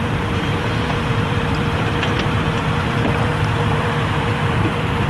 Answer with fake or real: fake